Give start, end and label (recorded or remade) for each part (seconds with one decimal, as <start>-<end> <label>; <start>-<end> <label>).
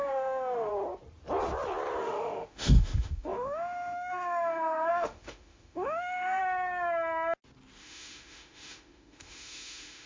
0.0-0.7 remade; 0.7-2.0 recorded; 2.0-6.4 remade; 6.4-7.8 recorded; 7.8-10.1 remade